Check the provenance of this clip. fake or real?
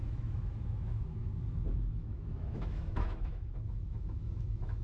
fake